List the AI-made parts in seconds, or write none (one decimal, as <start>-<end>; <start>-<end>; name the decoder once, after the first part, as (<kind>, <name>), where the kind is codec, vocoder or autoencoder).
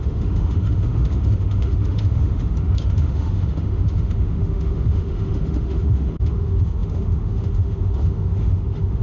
0.0-9.0 (autoencoder, DAC-VAE)